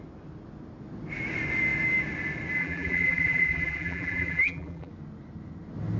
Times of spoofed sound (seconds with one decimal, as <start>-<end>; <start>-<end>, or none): 2.6-4.9